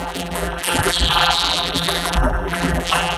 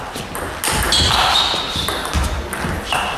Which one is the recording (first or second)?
second